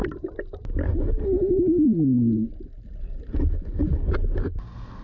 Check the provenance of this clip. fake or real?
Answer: real